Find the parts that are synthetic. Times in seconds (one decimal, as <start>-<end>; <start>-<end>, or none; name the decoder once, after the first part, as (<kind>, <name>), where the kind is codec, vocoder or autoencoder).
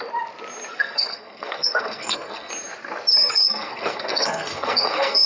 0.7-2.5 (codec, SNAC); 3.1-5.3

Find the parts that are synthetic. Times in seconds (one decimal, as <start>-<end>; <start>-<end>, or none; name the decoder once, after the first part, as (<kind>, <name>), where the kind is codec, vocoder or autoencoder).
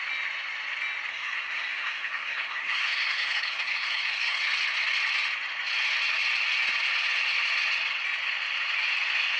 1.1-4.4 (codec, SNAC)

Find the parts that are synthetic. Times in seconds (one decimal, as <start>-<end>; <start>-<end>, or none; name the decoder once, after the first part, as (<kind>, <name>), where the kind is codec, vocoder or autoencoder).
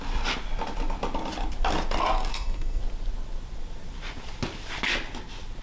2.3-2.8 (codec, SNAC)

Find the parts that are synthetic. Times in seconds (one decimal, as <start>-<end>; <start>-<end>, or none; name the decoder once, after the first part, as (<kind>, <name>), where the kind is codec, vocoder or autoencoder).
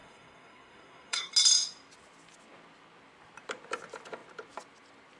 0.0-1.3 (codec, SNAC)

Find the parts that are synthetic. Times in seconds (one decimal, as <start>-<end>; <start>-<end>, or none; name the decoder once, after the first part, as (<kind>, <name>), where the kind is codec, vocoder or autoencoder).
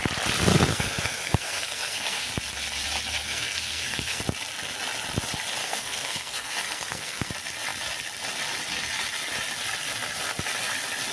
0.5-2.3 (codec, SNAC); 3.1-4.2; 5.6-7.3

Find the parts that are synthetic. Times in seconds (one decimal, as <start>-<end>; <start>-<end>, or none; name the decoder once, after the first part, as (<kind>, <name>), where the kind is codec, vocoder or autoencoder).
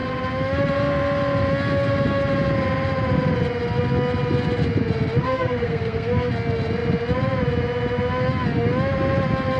5.2-6.3 (codec, SNAC)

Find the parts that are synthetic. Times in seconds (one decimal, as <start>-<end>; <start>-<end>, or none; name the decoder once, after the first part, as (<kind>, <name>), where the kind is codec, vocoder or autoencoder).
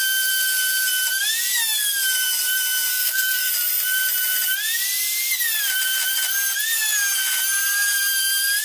2.9-3.5 (codec, SNAC)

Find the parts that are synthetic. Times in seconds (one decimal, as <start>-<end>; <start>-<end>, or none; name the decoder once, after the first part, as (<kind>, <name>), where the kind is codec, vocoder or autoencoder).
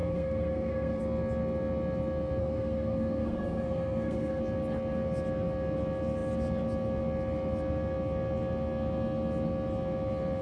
0.0-1.0 (codec, SNAC); 2.4-4.4